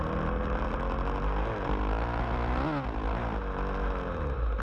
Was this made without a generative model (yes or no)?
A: yes